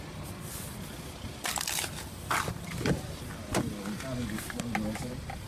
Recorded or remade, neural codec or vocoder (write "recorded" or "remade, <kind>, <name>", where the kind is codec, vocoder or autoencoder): recorded